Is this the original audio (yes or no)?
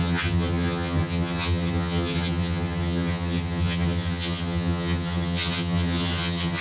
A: no